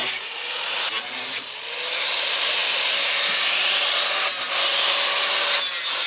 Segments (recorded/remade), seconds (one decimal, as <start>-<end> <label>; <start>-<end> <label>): 0.0-0.9 remade; 0.9-6.1 recorded

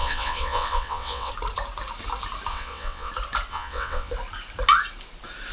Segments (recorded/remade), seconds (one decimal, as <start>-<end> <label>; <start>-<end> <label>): 0.0-1.3 remade; 1.3-2.5 recorded; 2.5-3.1 remade; 3.1-3.5 recorded; 3.5-4.1 remade; 4.1-5.5 recorded

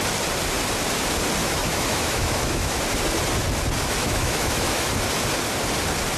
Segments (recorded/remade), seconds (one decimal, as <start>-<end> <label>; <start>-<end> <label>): 0.0-1.4 recorded; 1.4-2.8 remade; 2.8-4.0 recorded; 4.0-4.9 remade; 4.9-6.2 recorded

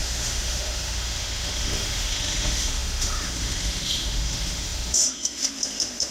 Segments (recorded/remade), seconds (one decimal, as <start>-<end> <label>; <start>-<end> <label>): 0.0-6.1 remade

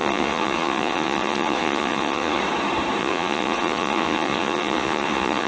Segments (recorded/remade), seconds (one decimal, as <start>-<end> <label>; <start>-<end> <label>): 0.0-2.4 remade; 2.4-3.0 recorded; 3.0-5.5 remade

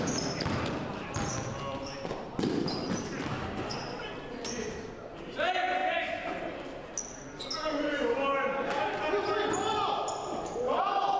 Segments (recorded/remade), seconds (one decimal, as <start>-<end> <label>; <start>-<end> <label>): 0.0-11.2 recorded

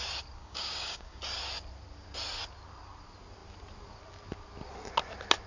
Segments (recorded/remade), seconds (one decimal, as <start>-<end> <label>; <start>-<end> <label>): 0.0-0.4 recorded; 0.4-1.2 remade; 1.2-5.5 recorded